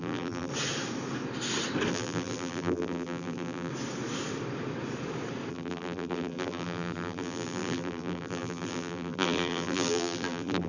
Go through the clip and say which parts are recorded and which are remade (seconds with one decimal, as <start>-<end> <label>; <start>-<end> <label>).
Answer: 0.0-0.5 remade; 0.5-1.9 recorded; 1.9-3.7 remade; 3.7-5.5 recorded; 5.5-10.7 remade